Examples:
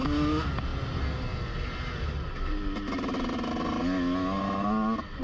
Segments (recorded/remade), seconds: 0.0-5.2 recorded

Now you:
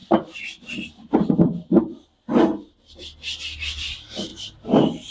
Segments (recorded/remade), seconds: 0.0-1.8 remade; 1.8-4.3 recorded; 4.3-5.1 remade

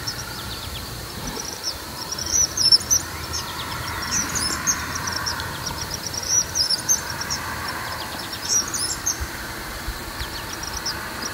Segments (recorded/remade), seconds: 0.0-10.0 remade; 10.0-11.3 recorded

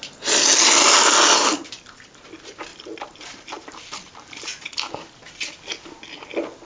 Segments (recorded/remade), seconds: 0.0-2.7 recorded; 2.7-4.7 remade; 4.7-6.6 recorded

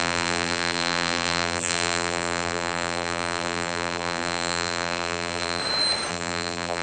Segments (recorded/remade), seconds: 0.0-5.6 remade; 5.6-6.1 recorded; 6.1-6.8 remade

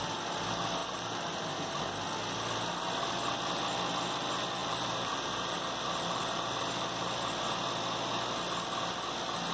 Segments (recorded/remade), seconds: 0.0-0.8 recorded; 0.8-1.8 remade; 1.8-4.6 recorded; 4.6-7.3 remade; 7.3-9.5 recorded

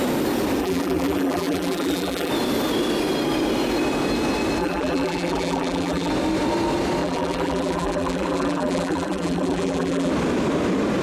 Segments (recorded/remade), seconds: 0.0-0.6 recorded; 0.6-2.3 remade; 2.3-4.6 recorded; 4.6-6.1 remade; 6.1-7.0 recorded; 7.0-10.1 remade; 10.1-11.0 recorded